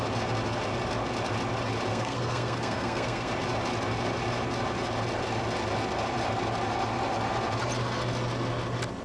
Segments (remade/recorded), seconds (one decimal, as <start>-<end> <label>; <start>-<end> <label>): 0.0-1.9 recorded; 1.9-3.3 remade; 3.3-9.0 recorded